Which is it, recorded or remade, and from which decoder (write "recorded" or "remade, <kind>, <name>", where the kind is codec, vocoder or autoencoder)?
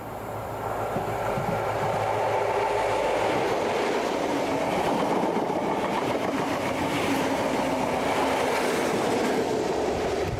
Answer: recorded